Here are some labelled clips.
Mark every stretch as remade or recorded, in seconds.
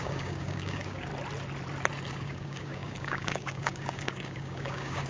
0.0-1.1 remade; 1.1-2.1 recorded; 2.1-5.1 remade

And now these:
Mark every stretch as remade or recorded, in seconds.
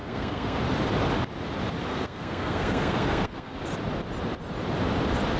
0.0-0.6 remade; 0.6-1.9 recorded; 1.9-3.6 remade; 3.6-5.4 recorded